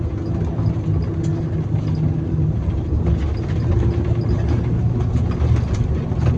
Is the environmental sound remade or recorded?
recorded